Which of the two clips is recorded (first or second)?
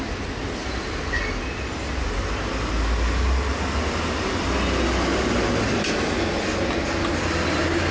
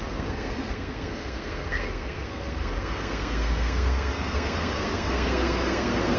first